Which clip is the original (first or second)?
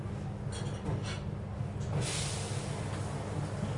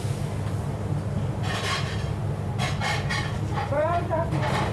first